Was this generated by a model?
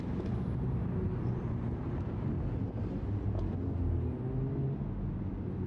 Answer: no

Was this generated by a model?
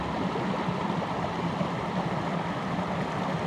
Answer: no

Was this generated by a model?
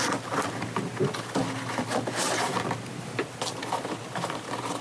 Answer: no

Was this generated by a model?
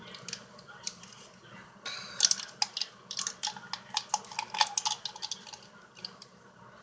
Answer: no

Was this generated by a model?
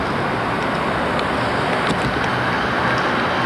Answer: no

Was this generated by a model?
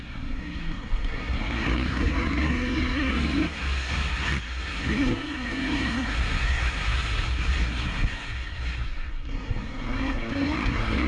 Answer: yes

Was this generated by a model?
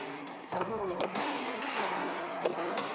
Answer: yes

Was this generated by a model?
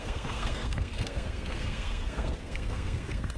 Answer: yes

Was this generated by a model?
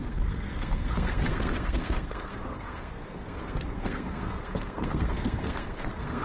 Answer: yes